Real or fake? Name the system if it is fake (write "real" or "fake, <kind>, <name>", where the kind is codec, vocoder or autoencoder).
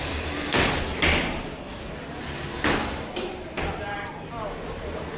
real